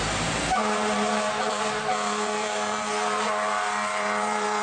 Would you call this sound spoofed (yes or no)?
yes